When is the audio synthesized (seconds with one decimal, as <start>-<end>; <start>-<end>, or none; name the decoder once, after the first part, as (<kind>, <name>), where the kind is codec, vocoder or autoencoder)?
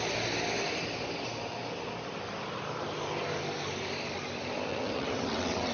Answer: 4.7-5.7 (vocoder, WaveNeXt)